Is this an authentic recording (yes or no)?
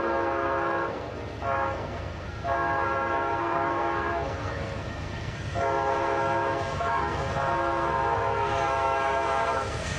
no